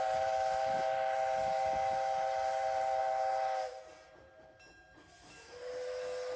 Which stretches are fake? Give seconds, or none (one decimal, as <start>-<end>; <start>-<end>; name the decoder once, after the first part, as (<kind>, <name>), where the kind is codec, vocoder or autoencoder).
none